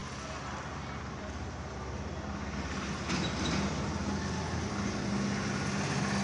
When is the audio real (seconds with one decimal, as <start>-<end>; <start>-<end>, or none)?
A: 0.0-6.2